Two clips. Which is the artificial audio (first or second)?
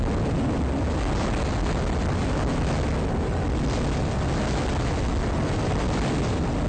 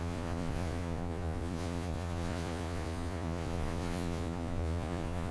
second